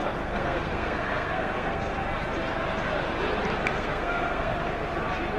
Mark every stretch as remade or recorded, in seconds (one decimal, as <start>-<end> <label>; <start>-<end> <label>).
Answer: 0.0-1.9 remade; 1.9-3.7 recorded; 3.7-4.5 remade; 4.5-5.4 recorded